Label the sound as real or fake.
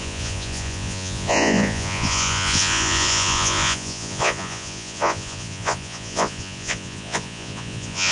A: fake